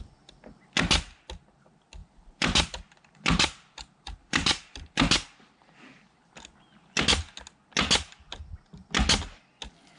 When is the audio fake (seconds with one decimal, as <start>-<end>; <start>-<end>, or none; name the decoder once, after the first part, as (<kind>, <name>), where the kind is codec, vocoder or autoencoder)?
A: 2.0-5.4 (vocoder, BigVGAN v2)